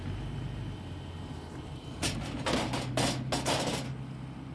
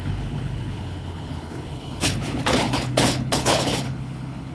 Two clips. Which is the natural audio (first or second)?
first